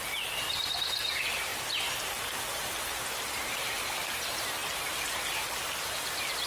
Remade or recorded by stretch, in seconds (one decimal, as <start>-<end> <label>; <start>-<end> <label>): 0.0-6.5 recorded